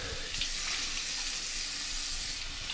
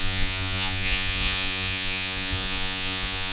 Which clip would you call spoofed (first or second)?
second